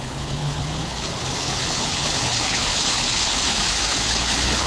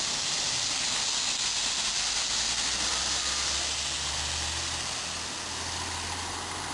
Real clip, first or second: second